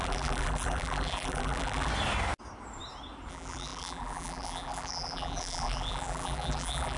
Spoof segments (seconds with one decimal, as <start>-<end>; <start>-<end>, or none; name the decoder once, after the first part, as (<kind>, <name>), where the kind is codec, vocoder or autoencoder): 0.0-1.9 (vocoder, BigVGAN v2); 3.3-7.0